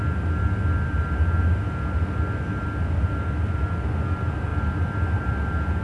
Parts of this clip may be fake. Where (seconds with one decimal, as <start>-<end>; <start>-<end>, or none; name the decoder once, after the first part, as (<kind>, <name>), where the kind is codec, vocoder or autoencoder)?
none